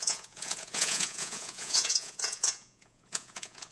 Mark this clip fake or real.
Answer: fake